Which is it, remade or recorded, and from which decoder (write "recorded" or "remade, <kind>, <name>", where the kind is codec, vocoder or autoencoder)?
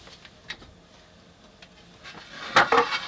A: recorded